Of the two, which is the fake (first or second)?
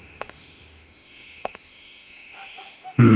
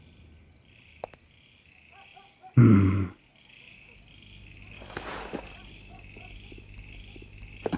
first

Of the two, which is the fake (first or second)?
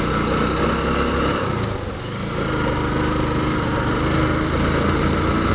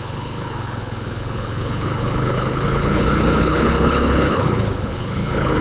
second